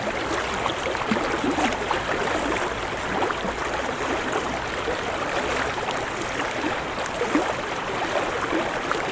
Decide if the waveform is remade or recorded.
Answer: remade